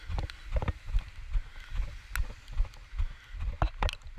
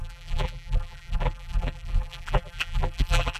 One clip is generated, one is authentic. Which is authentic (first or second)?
first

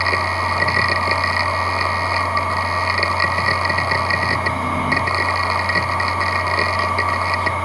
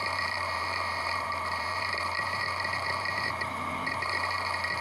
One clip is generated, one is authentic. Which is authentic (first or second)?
first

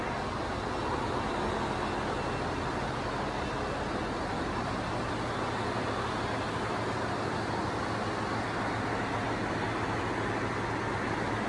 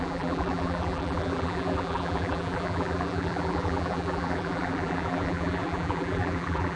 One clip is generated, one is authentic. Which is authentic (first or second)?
first